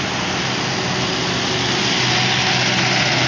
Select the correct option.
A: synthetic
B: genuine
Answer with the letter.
B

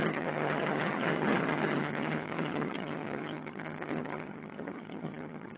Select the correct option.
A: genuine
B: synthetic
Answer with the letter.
B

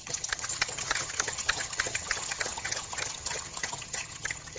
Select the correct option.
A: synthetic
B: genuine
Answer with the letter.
A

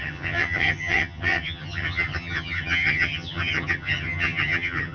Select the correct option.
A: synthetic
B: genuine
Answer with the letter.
A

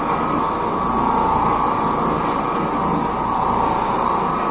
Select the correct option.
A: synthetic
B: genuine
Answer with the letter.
B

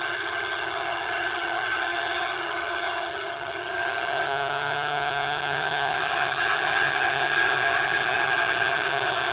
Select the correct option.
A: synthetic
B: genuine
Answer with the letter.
A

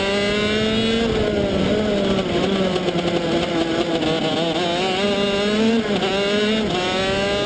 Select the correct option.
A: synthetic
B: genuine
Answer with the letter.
B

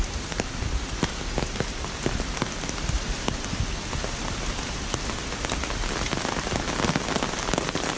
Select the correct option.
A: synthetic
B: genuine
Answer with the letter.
B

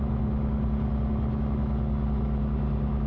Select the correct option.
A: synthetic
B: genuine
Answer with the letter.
B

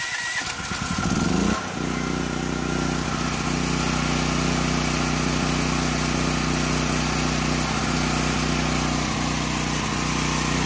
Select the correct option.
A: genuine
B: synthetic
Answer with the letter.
A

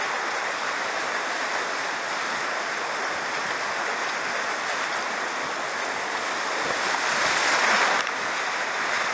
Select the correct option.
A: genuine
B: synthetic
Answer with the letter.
A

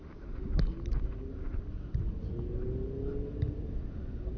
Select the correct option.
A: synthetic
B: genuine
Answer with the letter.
B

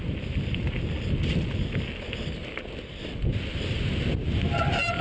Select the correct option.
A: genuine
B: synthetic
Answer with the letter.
A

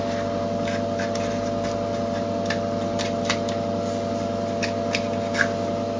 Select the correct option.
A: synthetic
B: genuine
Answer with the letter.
B